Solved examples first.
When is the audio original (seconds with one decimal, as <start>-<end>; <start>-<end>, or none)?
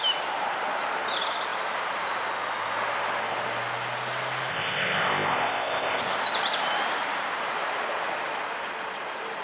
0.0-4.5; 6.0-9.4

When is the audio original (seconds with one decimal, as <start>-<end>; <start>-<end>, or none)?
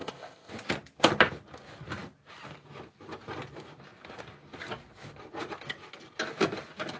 0.5-7.0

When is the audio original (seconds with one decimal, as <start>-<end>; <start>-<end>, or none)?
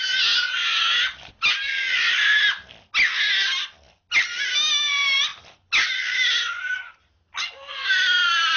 0.0-8.6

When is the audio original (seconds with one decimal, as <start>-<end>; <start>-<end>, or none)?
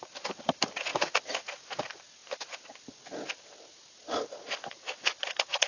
0.0-5.7